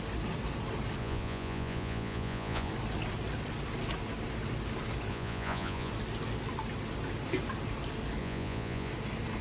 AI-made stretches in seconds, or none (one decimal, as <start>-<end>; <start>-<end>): 1.0-2.7; 5.1-5.9; 8.2-8.9